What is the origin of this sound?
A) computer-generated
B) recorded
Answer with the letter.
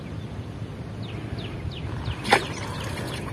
B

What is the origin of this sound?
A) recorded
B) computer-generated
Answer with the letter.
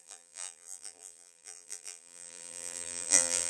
B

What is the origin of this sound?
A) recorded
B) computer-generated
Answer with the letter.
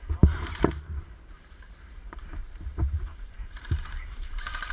B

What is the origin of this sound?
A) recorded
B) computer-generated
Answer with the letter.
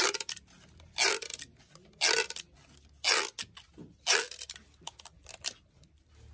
A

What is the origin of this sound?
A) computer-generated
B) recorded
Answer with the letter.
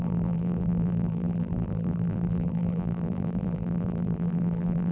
A